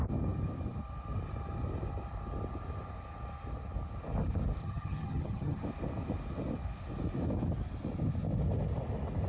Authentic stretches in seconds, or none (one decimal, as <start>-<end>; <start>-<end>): 0.0-4.6; 5.6-9.3